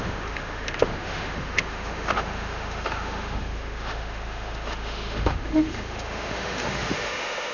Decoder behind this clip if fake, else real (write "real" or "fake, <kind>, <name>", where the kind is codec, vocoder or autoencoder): fake, autoencoder, DAC-VAE